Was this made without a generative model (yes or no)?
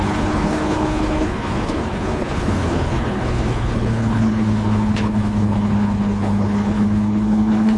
no